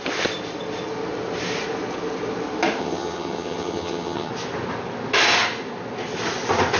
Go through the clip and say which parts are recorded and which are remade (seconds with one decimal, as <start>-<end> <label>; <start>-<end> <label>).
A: 0.0-2.8 recorded; 2.8-4.3 remade; 4.3-6.8 recorded